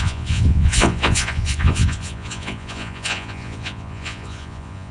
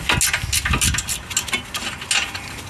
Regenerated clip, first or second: first